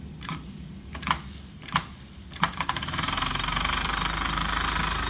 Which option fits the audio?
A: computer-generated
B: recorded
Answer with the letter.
B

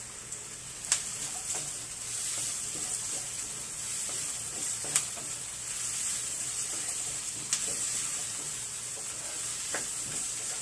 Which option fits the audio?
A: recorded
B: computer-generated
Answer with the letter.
B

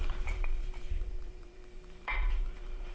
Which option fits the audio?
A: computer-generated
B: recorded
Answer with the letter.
A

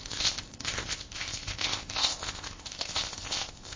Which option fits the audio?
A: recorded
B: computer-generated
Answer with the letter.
B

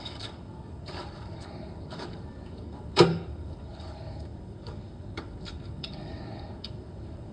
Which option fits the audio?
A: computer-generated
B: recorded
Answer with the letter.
A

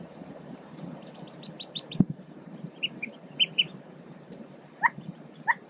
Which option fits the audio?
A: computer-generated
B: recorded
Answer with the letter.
A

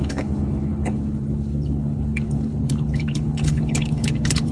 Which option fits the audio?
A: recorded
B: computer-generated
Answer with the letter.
B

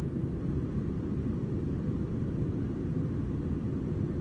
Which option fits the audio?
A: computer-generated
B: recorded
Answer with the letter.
A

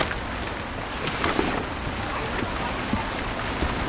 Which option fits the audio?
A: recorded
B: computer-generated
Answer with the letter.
A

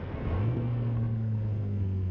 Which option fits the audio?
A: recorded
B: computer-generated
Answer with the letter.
B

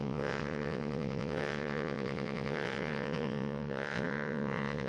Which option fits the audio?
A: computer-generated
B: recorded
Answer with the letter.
A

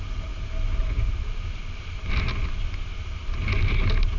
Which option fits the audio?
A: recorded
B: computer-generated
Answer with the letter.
A